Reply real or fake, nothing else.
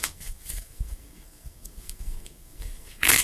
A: fake